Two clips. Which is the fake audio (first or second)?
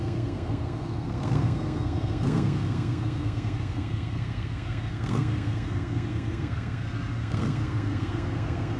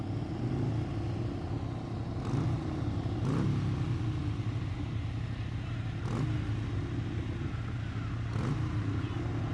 first